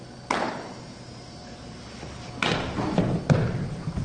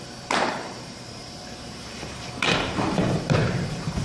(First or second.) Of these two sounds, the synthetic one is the second